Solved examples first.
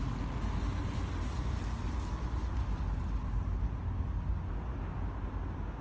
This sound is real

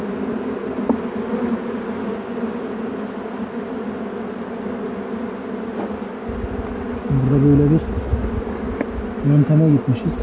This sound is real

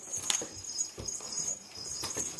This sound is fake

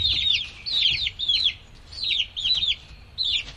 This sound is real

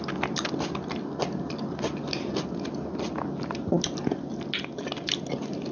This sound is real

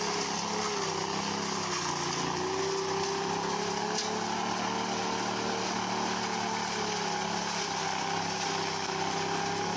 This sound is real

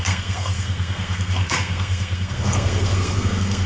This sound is fake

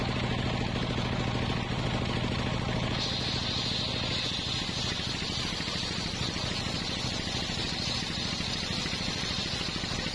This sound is real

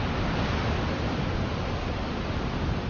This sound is real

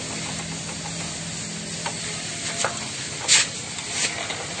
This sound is real